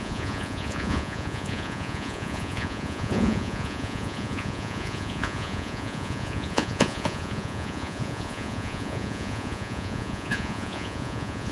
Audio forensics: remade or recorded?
remade